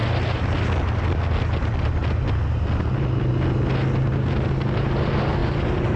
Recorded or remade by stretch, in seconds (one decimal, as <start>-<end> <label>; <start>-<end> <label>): 0.0-6.0 recorded